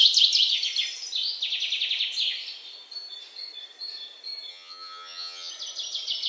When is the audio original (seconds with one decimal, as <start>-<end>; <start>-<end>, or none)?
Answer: 0.0-4.5; 5.5-6.3